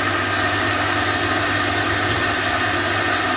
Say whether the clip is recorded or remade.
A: recorded